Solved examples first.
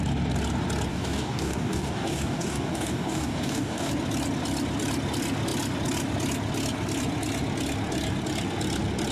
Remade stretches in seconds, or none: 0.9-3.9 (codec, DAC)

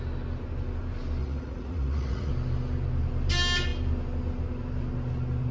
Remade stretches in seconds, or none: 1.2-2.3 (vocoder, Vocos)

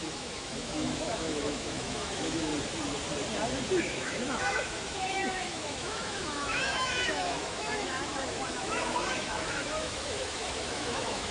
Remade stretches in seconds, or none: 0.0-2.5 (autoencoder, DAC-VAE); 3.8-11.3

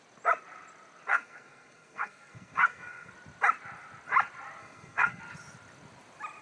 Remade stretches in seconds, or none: 1.1-3.1 (codec, SNAC); 4.6-5.2